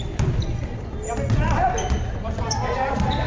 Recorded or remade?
recorded